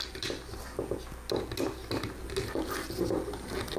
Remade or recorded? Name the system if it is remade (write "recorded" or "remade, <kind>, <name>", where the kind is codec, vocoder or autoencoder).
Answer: recorded